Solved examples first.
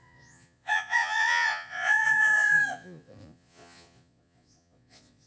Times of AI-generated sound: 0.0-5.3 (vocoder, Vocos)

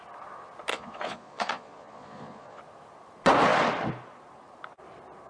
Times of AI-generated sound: 0.7-2.6 (vocoder, Vocos)

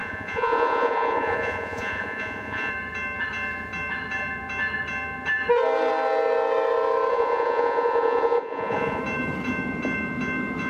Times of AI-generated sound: 0.0-2.7 (vocoder, Vocos); 7.1-9.0

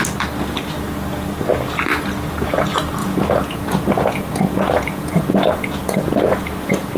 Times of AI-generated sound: 3.0-7.0 (vocoder, Vocos)

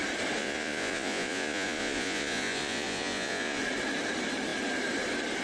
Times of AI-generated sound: 0.4-3.6 (vocoder, Vocos)

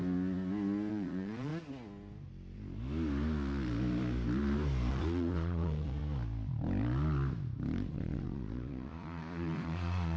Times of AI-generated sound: 0.9-1.5 (vocoder, Vocos); 4.9-6.0; 7.9-10.2

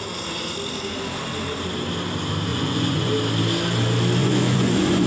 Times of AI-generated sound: 2.5-3.1 (vocoder, Vocos); 4.2-5.1

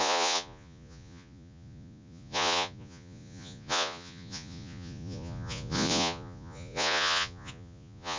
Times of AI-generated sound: 0.0-8.2 (vocoder, Vocos)